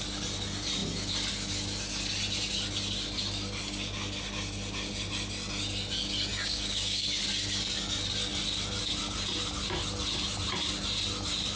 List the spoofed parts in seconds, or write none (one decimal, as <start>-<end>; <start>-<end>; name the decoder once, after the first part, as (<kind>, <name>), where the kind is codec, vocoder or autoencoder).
6.3-7.2 (codec, DAC)